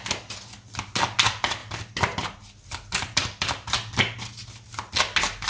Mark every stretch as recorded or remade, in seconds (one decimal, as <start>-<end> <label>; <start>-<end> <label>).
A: 0.0-5.5 recorded